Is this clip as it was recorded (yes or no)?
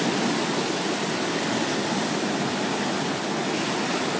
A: yes